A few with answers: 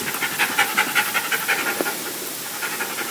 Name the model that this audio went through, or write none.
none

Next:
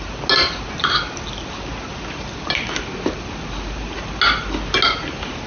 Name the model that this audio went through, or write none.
none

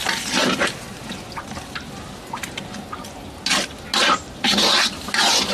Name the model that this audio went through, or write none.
none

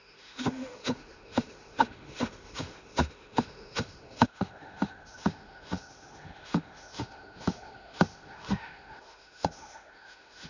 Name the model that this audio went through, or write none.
autoencoder, DAC-VAE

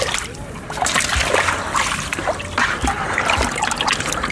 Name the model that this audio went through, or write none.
none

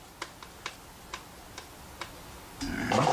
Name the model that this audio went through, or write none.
none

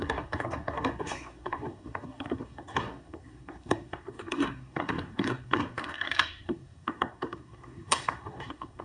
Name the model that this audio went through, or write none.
codec, SNAC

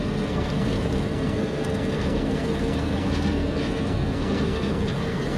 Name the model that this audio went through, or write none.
codec, SNAC